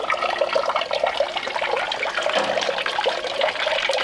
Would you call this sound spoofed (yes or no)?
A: no